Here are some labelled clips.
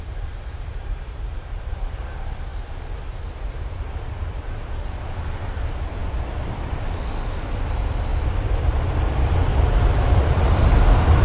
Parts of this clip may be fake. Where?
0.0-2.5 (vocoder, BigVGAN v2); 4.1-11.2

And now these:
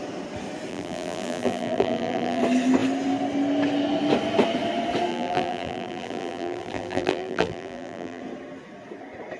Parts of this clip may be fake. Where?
0.7-2.4 (vocoder, BigVGAN v2); 5.1-8.2

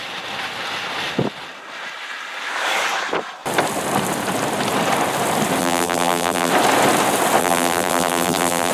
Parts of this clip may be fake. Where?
5.6-6.5 (vocoder, BigVGAN v2); 7.4-8.7